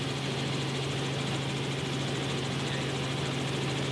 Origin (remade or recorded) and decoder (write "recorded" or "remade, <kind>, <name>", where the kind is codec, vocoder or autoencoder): recorded